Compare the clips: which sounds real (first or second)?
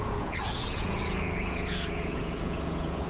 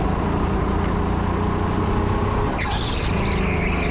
second